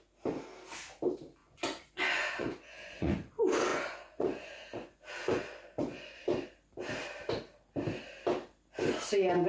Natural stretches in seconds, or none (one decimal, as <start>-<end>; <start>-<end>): 0.0-1.4; 3.3-3.7; 6.2-9.5